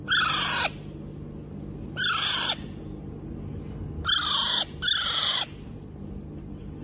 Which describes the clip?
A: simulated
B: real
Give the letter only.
B